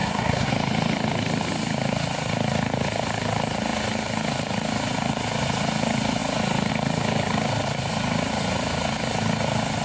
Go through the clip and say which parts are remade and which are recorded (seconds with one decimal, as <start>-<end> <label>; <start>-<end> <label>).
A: 0.0-0.5 remade; 0.5-9.8 recorded